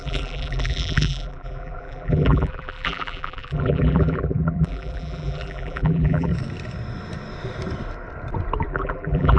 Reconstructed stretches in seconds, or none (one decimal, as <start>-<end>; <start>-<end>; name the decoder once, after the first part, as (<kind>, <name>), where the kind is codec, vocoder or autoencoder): 0.0-6.3 (vocoder, BigVGAN v2); 8.7-9.4